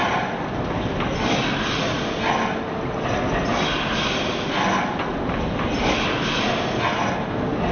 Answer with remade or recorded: recorded